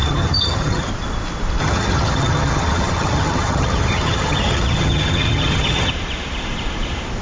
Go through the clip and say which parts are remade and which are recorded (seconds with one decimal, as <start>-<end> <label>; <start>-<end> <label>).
0.0-0.9 remade; 0.9-1.6 recorded; 1.6-5.9 remade; 5.9-7.2 recorded